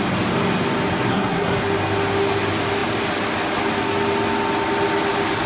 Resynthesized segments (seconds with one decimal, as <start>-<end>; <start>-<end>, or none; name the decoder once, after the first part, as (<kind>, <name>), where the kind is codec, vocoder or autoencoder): 1.1-1.6 (codec, SNAC)